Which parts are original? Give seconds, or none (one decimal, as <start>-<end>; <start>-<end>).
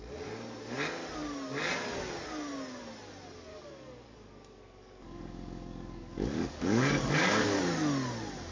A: 0.0-3.5; 7.6-8.5